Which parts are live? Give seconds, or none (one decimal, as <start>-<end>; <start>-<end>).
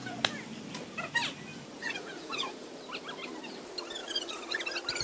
0.0-1.8; 2.7-4.0; 4.6-5.0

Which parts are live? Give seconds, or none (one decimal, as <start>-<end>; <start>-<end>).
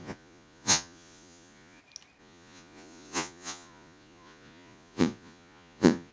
1.8-2.2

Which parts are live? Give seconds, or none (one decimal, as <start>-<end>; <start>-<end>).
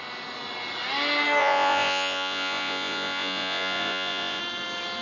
0.0-1.4; 4.4-5.0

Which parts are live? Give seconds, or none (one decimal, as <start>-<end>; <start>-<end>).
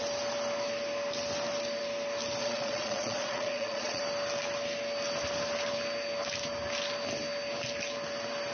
0.0-2.4; 4.0-8.5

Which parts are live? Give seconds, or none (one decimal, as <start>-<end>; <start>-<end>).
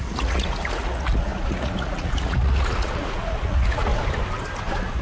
3.9-4.6